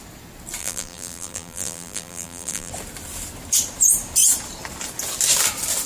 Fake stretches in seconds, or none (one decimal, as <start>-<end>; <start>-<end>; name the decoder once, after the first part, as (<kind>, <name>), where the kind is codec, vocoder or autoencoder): 0.6-2.7 (vocoder, BigVGAN v2)

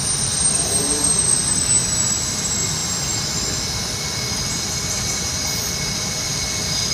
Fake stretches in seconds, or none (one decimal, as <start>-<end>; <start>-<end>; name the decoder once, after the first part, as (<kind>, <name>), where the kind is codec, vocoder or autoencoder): none

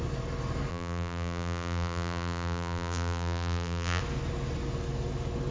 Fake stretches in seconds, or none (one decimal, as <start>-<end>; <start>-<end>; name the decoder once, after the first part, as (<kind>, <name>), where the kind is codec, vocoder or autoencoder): 0.7-4.0 (vocoder, BigVGAN v2)

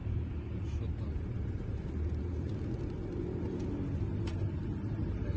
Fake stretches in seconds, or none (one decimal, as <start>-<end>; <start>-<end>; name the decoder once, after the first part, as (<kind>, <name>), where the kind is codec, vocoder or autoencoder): 0.0-5.4 (vocoder, BigVGAN v2)

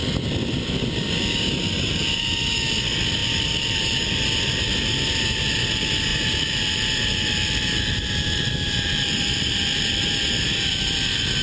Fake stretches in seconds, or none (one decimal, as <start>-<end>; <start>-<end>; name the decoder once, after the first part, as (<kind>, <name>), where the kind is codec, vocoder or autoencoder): 3.2-4.4 (vocoder, BigVGAN v2); 6.1-10.4

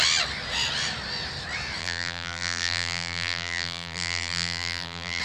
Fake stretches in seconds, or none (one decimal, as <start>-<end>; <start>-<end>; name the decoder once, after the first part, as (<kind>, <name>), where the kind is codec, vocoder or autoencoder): 1.8-5.2 (vocoder, BigVGAN v2)